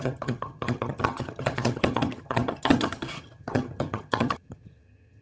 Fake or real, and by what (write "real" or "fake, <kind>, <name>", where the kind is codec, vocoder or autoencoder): fake, vocoder, HiFi-GAN